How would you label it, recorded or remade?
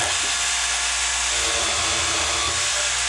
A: recorded